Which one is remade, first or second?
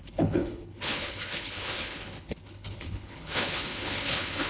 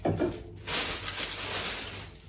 first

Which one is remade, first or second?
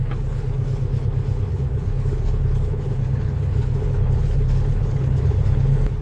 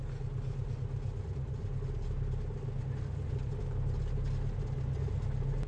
first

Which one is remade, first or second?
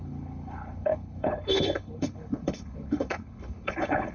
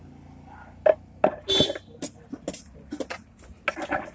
first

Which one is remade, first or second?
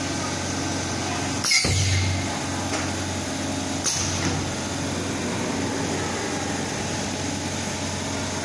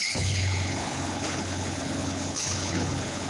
second